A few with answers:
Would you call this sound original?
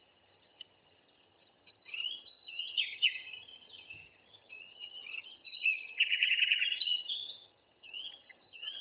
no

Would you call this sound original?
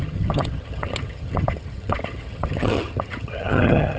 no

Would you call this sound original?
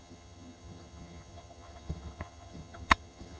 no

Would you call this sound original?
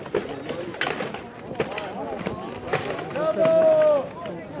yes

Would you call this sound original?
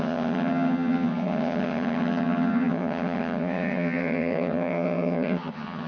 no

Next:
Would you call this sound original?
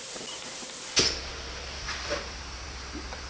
yes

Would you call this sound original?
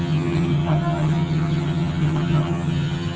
no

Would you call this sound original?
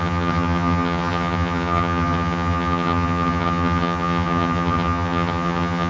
no